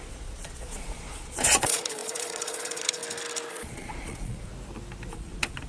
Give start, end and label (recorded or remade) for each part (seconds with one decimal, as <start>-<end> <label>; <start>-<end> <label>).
0.0-3.0 remade; 3.0-3.5 recorded; 3.5-4.5 remade; 4.5-5.1 recorded; 5.1-5.7 remade